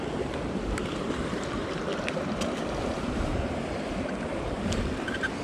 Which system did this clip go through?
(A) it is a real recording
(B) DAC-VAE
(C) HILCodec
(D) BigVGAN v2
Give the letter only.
A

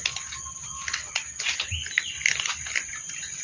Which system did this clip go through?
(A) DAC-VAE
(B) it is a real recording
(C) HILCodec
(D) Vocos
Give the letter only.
B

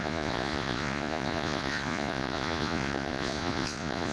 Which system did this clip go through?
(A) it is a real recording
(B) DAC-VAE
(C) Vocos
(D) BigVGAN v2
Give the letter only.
C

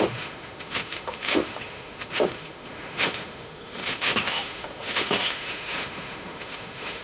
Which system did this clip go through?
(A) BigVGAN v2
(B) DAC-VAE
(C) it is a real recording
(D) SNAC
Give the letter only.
B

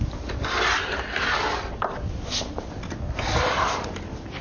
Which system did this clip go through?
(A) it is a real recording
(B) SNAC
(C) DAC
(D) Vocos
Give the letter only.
A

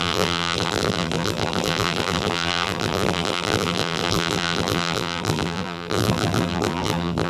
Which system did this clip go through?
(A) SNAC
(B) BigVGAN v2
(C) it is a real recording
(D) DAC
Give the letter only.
B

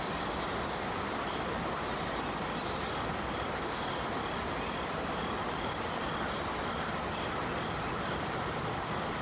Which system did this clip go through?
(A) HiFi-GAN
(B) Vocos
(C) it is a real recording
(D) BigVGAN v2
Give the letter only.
C